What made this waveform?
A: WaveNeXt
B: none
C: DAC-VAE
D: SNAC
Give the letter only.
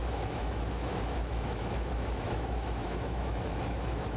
C